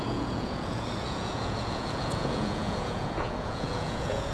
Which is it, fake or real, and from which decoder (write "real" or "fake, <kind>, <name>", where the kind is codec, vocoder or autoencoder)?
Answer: fake, vocoder, Vocos